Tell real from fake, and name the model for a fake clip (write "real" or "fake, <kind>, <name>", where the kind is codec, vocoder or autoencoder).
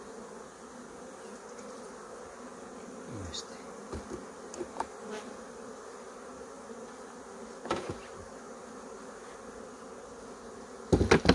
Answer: real